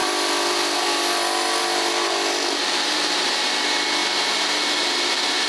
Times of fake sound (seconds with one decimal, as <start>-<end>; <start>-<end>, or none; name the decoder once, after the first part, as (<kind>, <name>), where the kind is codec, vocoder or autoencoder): 0.0-3.3 (vocoder, BigVGAN v2)